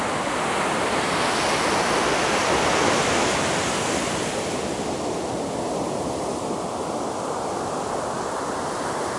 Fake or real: fake